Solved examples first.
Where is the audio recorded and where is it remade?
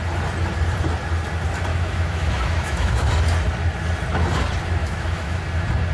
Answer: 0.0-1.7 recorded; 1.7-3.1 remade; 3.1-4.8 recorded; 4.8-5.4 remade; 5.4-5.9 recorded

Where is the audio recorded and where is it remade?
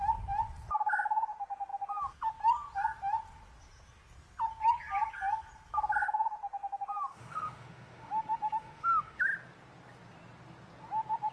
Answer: 0.0-7.1 recorded; 7.1-9.2 remade; 9.2-11.3 recorded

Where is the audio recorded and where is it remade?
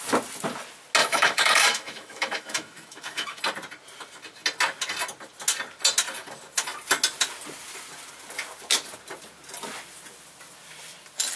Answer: 0.0-1.0 recorded; 1.0-3.4 remade; 3.4-11.4 recorded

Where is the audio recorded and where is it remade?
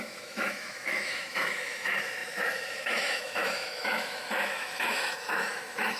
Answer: 0.0-6.0 remade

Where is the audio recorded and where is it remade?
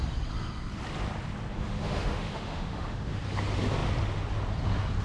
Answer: 0.0-1.5 recorded; 1.5-3.2 remade; 3.2-5.0 recorded